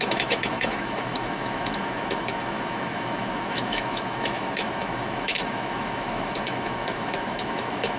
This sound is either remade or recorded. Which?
remade